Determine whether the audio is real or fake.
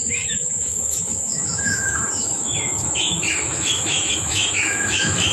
fake